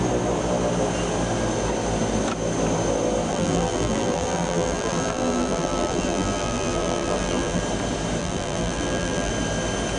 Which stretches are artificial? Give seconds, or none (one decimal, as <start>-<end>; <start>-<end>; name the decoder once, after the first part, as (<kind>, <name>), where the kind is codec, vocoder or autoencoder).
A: 3.3-7.6 (vocoder, BigVGAN v2); 8.2-9.3